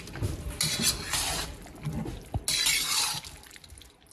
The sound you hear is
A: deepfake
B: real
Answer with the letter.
B